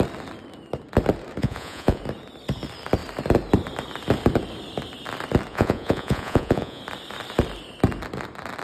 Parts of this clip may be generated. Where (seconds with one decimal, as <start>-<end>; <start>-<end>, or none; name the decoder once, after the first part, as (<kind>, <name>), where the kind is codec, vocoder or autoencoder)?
1.4-2.0 (vocoder, Vocos); 5.5-6.8